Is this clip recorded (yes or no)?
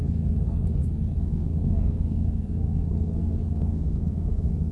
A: no